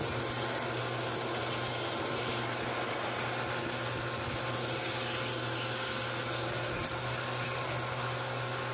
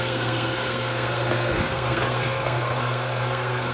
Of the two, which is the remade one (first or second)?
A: second